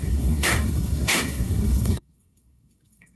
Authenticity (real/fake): fake